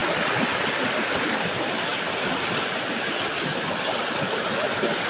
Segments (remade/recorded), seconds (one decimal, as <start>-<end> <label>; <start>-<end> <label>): 0.0-5.1 recorded